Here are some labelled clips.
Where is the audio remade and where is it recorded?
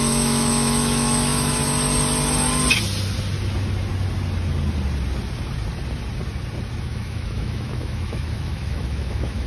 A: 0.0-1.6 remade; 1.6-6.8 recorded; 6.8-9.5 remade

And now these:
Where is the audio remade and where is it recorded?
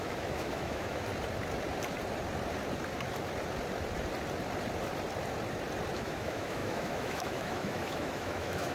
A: 0.0-1.1 remade; 1.1-5.9 recorded; 5.9-8.7 remade